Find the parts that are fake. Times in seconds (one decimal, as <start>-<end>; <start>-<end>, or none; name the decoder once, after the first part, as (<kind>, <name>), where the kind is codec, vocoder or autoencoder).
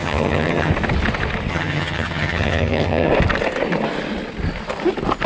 0.0-0.7 (vocoder, HiFi-GAN); 1.5-3.1